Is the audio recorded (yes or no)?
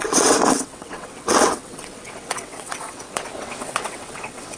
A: no